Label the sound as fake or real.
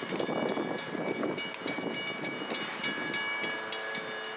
real